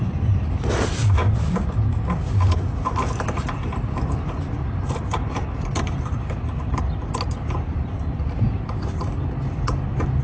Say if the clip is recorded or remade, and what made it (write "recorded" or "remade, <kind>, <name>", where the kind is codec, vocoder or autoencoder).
recorded